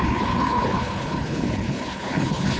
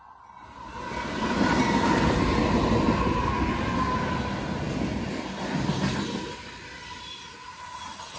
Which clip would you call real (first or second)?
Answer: second